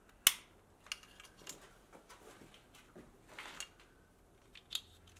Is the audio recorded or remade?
recorded